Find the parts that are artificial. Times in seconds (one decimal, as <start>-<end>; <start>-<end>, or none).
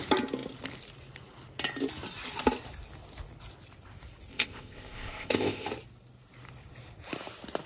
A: 4.3-5.7